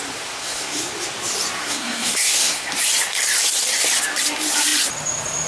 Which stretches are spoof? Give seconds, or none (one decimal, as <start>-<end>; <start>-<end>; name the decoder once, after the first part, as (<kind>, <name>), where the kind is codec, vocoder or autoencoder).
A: 0.4-0.9 (codec, SNAC); 1.6-2.7